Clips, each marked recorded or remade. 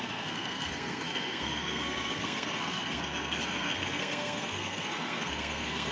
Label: remade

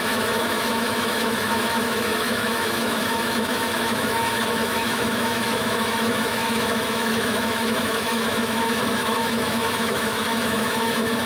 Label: remade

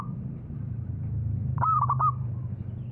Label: remade